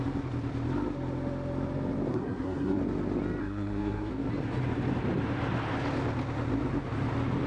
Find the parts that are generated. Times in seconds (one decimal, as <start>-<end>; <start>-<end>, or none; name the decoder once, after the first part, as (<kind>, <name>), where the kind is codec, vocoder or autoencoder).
2.1-2.8 (codec, SNAC); 3.4-4.1